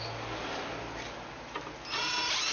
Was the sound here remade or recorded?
recorded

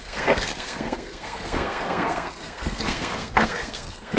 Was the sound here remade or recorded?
remade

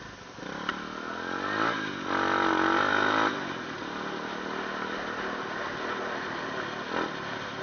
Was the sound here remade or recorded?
recorded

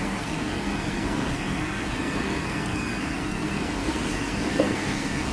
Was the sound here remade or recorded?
remade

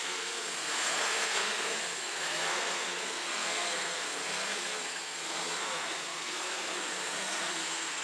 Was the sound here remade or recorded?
remade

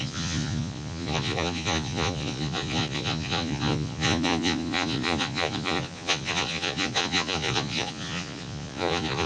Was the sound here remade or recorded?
remade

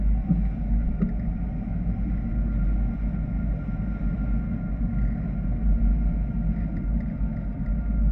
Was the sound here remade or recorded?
recorded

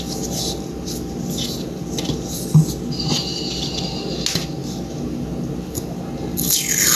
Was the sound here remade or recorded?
recorded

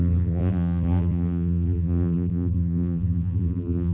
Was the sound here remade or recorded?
remade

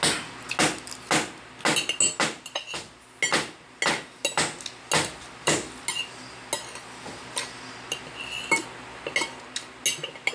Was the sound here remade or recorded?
recorded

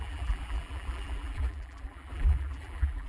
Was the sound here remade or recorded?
remade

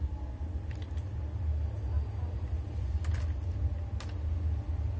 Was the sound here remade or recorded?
recorded